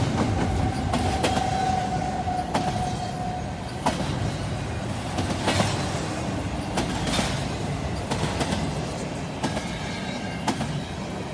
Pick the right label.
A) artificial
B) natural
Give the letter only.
B